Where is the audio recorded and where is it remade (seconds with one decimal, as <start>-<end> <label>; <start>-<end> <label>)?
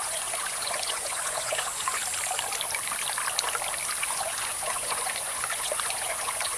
0.0-2.0 remade; 2.0-4.0 recorded; 4.0-6.6 remade